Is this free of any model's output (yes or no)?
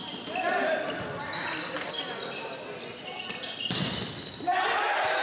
yes